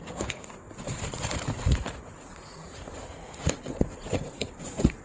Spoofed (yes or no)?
yes